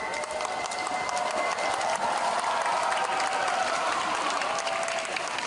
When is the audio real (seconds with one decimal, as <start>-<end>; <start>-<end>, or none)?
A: 0.0-5.5